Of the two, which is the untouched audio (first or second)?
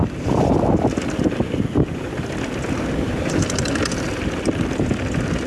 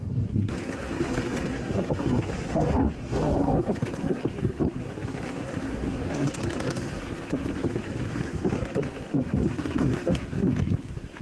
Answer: first